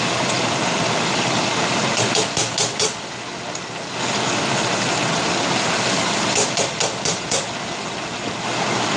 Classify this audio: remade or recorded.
recorded